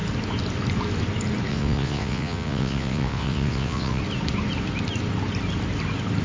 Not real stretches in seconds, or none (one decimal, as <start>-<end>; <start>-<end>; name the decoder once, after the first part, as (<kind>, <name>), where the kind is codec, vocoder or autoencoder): 1.5-4.0 (vocoder, WaveNeXt)